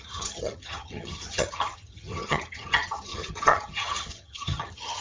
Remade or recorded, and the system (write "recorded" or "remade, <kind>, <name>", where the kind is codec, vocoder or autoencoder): remade, vocoder, HiFi-GAN